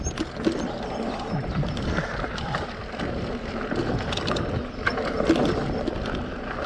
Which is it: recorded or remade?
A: recorded